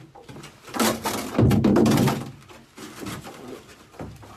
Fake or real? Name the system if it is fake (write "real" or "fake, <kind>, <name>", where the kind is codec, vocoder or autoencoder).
real